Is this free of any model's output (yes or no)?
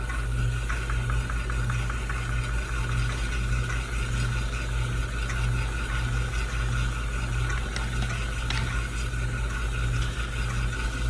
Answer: yes